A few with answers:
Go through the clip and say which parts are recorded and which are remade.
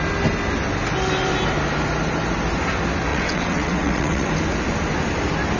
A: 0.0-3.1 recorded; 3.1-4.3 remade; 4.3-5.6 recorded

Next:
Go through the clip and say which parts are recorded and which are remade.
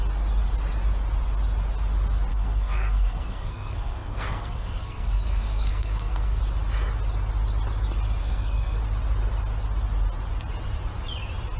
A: 0.0-2.3 recorded; 2.3-6.4 remade; 6.4-8.2 recorded; 8.2-8.8 remade; 8.8-11.6 recorded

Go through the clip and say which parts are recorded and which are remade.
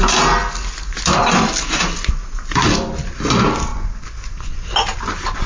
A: 0.0-3.7 recorded; 3.7-4.7 remade; 4.7-5.5 recorded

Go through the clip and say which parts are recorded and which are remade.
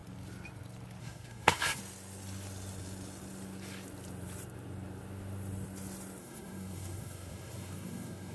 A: 0.0-1.0 recorded; 1.0-1.8 remade; 1.8-6.2 recorded; 6.2-8.3 remade